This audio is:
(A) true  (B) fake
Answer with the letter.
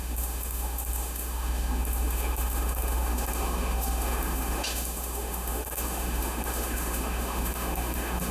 B